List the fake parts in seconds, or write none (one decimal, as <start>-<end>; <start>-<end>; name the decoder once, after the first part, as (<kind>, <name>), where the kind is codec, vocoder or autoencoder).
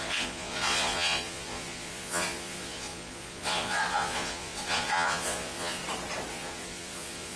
0.0-5.8 (vocoder, Vocos); 6.3-7.4